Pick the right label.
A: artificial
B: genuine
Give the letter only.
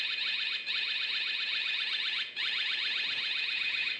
A